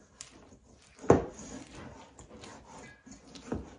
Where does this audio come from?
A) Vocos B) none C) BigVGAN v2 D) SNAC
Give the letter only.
B